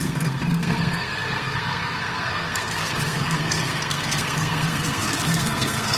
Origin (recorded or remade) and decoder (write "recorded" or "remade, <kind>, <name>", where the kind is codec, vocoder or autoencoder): remade, codec, SNAC